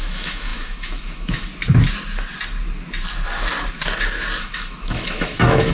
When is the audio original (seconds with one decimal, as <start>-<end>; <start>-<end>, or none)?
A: 1.5-4.4